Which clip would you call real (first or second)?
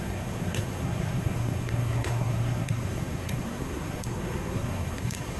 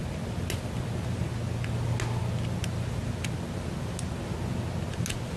second